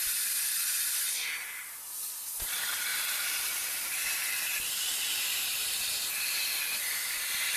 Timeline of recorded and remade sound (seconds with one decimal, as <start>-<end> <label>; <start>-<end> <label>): 0.0-2.9 recorded; 2.9-6.1 remade; 6.1-7.6 recorded